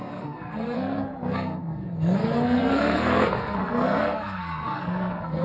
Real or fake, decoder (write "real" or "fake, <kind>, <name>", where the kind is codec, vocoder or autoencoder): fake, codec, SNAC